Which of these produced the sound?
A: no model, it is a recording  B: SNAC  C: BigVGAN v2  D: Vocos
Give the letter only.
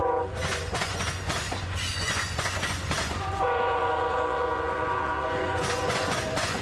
D